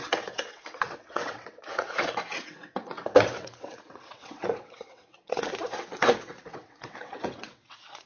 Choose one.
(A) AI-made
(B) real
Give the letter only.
A